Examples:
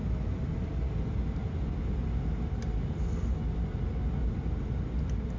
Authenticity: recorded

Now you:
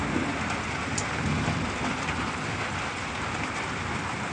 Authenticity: recorded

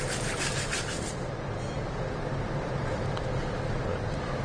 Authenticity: recorded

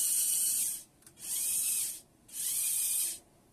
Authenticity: remade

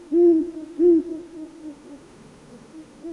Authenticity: remade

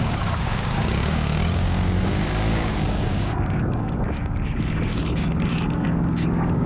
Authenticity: remade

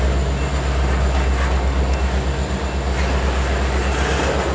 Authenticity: recorded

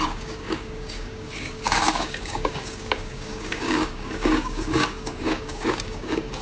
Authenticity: remade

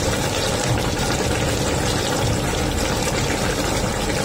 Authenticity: recorded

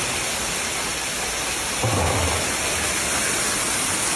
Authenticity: recorded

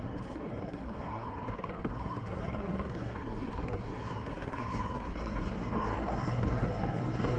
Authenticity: remade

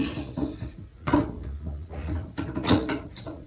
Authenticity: remade